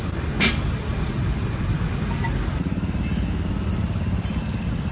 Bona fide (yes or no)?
no